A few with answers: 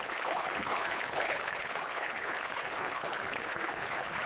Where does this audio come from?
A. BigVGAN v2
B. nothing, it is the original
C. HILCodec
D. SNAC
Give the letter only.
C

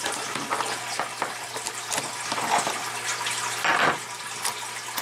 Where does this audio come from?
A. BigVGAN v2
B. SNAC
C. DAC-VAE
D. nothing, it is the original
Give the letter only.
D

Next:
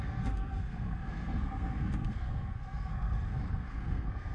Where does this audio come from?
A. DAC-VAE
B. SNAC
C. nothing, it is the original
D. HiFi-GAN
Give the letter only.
B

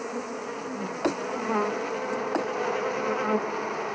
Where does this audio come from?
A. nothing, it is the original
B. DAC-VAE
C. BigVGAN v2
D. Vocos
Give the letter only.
A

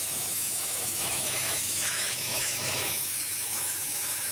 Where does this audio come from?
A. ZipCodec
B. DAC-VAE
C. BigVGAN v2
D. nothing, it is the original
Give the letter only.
B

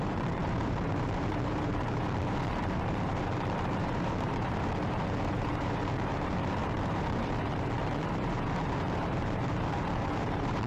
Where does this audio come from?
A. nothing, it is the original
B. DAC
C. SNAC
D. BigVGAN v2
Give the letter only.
D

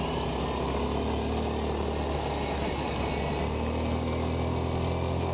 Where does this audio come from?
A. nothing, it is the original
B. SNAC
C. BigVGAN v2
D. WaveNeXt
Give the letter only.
A